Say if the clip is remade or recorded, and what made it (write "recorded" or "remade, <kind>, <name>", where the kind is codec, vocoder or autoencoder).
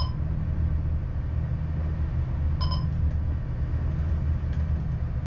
recorded